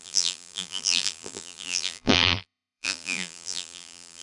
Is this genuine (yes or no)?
no